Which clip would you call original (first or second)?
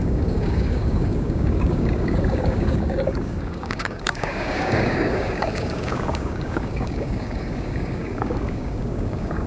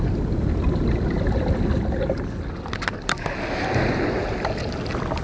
second